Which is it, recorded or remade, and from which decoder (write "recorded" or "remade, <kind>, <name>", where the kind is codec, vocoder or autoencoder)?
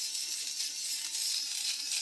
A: recorded